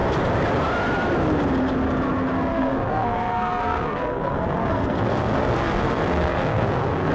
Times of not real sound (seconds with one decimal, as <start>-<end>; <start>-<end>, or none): 2.5-7.1